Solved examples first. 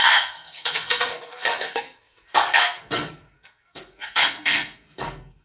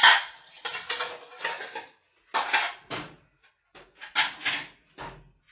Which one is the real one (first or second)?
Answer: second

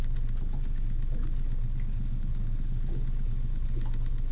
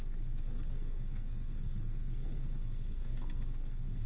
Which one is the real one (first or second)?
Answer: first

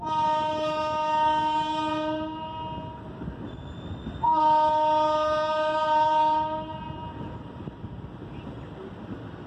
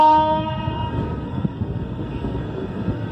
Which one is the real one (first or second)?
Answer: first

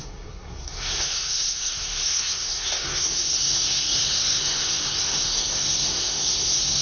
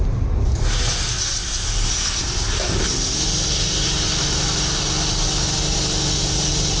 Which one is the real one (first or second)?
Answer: second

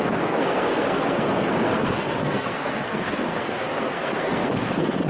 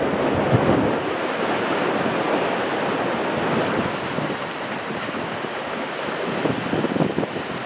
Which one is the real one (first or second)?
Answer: second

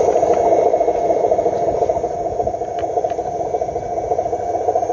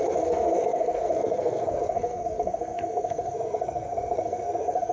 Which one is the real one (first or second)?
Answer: first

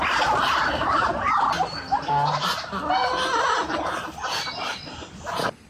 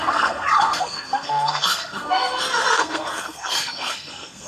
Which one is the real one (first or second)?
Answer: first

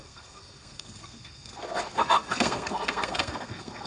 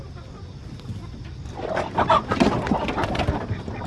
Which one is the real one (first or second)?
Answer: second